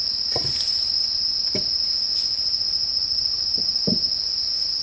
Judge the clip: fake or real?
real